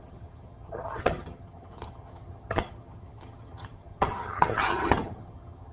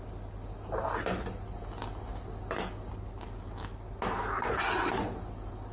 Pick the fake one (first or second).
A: first